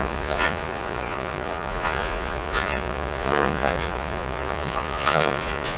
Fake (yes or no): yes